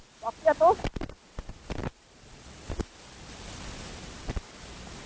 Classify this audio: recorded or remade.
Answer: recorded